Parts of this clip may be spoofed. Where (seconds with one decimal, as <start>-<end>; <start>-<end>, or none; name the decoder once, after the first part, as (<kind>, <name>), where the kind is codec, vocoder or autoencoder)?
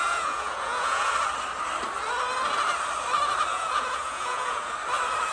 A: 0.0-1.1 (vocoder, Vocos); 3.5-4.7